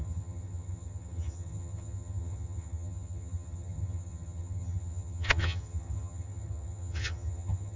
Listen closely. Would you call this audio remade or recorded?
remade